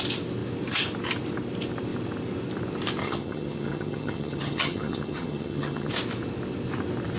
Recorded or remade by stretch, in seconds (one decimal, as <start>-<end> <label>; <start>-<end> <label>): 0.0-3.0 recorded; 3.0-5.9 remade; 5.9-7.2 recorded